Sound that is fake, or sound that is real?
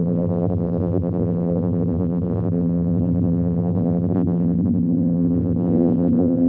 fake